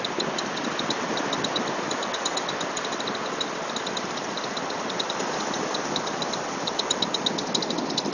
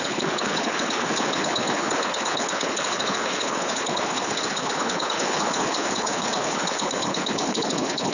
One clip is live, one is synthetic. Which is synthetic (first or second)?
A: second